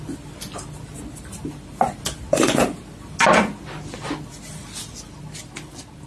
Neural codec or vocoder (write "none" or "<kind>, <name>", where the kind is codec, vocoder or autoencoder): none